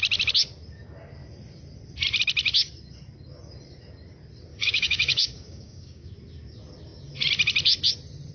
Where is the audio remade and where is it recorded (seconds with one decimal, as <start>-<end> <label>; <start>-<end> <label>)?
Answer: 0.0-4.5 recorded; 4.5-6.1 remade; 6.1-8.3 recorded